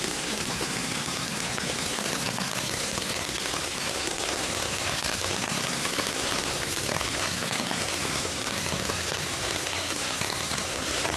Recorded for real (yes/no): no